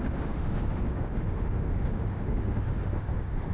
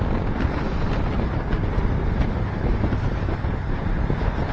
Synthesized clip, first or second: first